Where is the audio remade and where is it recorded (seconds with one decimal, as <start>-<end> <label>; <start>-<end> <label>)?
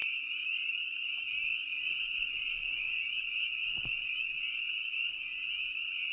0.0-1.5 recorded; 1.5-4.9 remade; 4.9-6.1 recorded